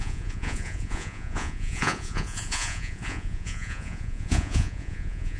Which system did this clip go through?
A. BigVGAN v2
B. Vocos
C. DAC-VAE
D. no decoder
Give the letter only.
B